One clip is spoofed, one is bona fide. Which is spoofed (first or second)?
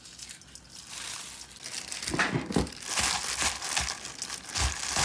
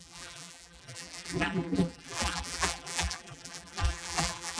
second